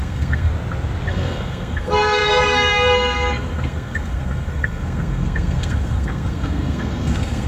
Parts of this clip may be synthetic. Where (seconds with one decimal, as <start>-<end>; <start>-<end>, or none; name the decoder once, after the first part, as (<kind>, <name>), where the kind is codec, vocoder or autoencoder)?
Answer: 0.0-0.5 (codec, SNAC); 1.1-7.5